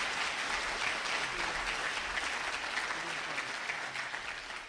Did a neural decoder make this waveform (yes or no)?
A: no